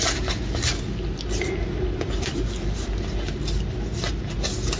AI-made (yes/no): no